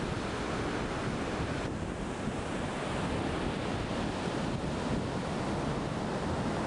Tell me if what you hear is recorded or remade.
recorded